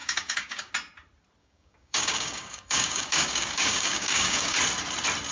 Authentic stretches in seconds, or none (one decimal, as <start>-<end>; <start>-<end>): 0.7-1.4; 4.6-5.3